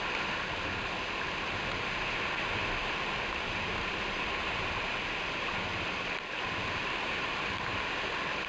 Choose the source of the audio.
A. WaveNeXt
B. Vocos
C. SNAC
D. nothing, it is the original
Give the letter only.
D